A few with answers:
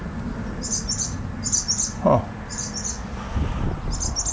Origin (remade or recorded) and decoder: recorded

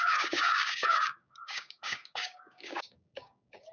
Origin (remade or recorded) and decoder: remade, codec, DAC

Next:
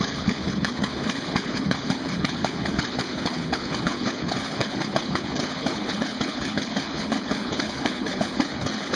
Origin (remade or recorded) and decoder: remade, codec, HILCodec